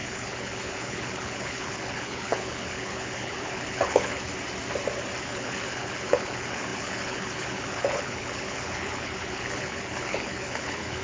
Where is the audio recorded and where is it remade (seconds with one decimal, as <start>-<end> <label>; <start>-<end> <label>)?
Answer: 0.0-4.3 remade; 4.3-5.2 recorded; 5.2-11.0 remade